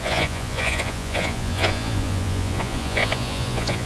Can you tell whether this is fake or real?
fake